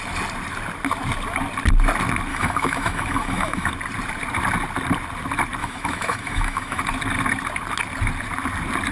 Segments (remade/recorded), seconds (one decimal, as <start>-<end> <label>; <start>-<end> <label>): 0.0-2.3 recorded; 2.3-3.7 remade; 3.7-5.6 recorded; 5.6-6.8 remade; 6.8-8.9 recorded

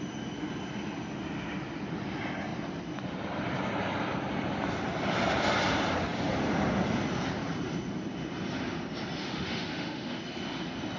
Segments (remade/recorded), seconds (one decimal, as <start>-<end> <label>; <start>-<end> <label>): 0.0-9.2 recorded; 9.2-10.2 remade; 10.2-11.0 recorded

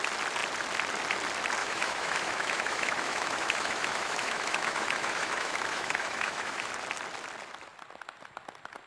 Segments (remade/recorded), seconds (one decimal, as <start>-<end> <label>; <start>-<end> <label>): 0.0-1.6 recorded; 1.6-6.7 remade; 6.7-8.9 recorded